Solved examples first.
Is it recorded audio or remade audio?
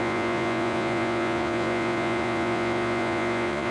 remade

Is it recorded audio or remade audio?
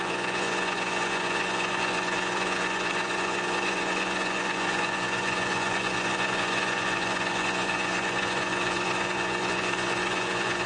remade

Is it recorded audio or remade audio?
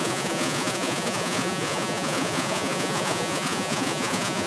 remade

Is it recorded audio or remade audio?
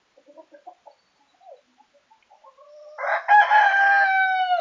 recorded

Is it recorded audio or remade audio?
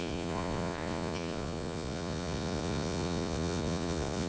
remade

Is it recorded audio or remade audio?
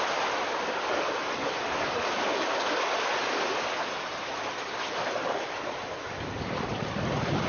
recorded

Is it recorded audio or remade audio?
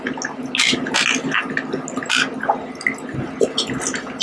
recorded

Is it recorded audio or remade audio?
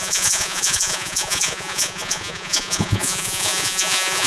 remade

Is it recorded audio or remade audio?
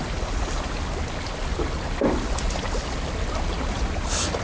recorded